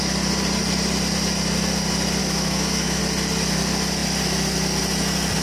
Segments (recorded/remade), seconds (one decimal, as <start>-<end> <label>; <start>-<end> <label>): 0.0-2.2 recorded; 2.2-3.0 remade; 3.0-5.4 recorded